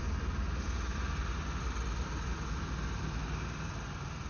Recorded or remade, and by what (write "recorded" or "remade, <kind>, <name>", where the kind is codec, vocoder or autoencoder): recorded